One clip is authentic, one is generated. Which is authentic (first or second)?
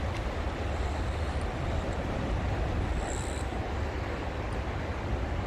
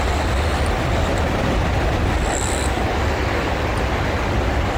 second